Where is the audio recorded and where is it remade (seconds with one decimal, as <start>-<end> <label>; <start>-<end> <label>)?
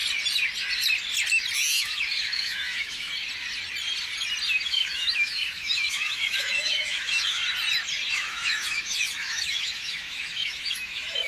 0.0-1.8 recorded; 1.8-3.1 remade; 3.1-4.7 recorded; 4.7-7.4 remade; 7.4-8.1 recorded; 8.1-11.3 remade